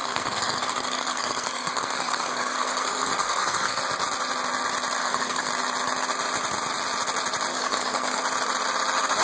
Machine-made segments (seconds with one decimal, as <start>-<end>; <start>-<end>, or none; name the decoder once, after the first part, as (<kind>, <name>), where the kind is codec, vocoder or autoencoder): 0.0-3.8 (codec, SNAC); 5.0-5.5; 7.5-8.2